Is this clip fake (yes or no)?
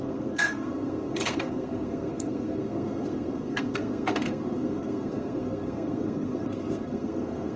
yes